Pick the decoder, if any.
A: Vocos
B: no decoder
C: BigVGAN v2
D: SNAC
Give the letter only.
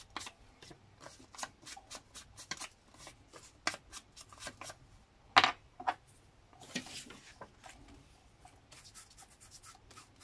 B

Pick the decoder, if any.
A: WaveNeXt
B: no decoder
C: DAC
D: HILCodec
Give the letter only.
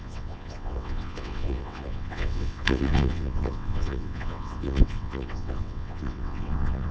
A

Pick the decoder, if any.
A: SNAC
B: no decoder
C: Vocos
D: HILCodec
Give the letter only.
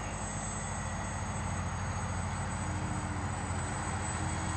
B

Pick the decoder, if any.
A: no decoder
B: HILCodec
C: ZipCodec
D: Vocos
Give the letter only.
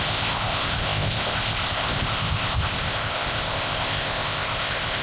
C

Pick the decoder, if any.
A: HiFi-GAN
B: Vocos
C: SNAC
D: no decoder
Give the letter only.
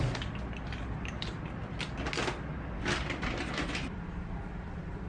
D